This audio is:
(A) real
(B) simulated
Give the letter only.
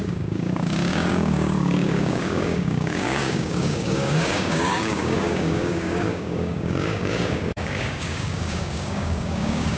B